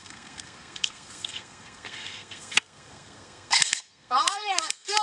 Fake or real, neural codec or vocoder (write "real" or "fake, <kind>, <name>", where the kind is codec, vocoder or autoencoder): fake, codec, SNAC